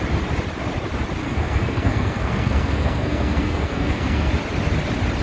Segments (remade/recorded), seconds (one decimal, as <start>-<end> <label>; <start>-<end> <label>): 0.0-1.2 recorded; 1.2-4.3 remade; 4.3-5.2 recorded